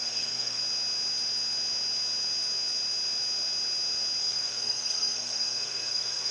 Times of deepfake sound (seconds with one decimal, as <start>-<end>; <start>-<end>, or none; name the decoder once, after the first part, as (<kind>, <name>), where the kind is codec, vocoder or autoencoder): 0.0-0.6 (codec, SNAC); 4.2-6.3